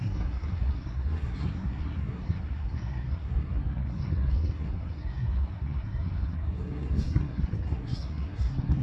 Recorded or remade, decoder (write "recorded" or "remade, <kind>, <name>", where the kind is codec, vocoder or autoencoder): remade, codec, SNAC